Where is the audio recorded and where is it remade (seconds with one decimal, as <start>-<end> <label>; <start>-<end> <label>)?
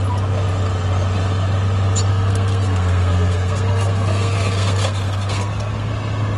0.0-2.1 recorded; 2.1-5.9 remade; 5.9-6.4 recorded